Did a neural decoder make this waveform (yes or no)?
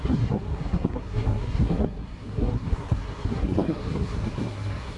yes